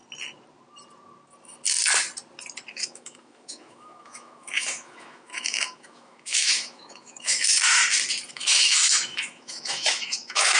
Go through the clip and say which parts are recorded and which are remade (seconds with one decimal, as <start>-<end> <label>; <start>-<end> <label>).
0.0-2.7 recorded; 2.7-7.8 remade; 7.8-8.3 recorded; 8.3-10.6 remade